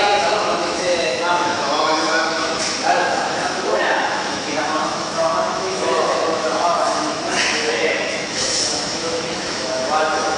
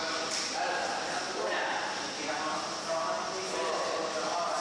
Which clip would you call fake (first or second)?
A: first